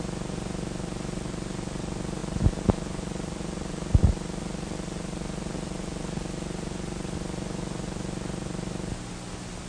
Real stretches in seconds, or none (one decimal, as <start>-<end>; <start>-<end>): 0.0-9.7